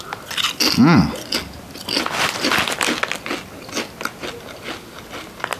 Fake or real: real